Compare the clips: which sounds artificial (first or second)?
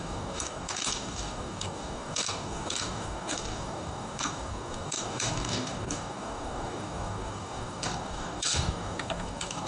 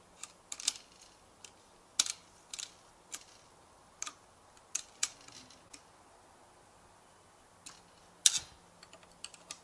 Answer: first